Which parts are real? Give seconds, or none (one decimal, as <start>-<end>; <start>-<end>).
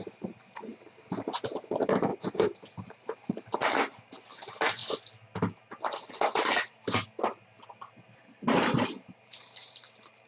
2.1-2.6; 4.8-8.6